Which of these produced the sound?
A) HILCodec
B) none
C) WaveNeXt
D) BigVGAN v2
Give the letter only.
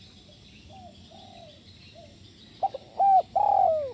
B